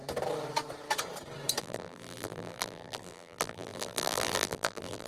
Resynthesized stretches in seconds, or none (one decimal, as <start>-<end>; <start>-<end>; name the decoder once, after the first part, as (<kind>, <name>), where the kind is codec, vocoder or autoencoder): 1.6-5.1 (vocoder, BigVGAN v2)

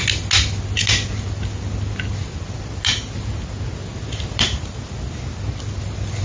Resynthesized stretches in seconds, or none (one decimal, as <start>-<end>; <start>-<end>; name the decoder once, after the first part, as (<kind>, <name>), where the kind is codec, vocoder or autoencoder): 3.9-4.6 (vocoder, BigVGAN v2)

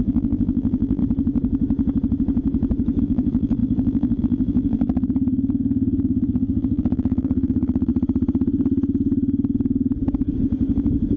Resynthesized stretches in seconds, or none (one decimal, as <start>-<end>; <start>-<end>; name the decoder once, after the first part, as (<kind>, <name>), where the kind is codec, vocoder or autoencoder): 0.0-1.0 (vocoder, BigVGAN v2); 3.0-7.9

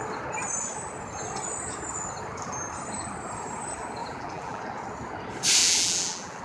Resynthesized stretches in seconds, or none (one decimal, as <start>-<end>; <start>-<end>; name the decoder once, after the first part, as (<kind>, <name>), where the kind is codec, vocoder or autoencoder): 4.0-4.6 (vocoder, BigVGAN v2); 5.6-6.4

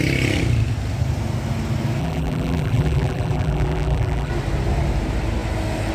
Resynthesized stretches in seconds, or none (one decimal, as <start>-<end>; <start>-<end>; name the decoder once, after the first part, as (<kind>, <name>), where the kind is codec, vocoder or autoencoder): 2.0-4.3 (vocoder, BigVGAN v2)

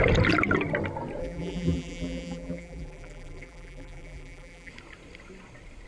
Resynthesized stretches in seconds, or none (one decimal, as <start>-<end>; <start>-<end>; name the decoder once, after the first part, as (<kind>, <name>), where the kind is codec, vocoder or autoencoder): 1.2-4.7 (vocoder, BigVGAN v2)